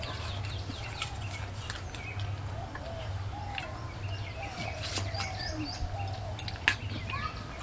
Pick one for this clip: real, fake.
real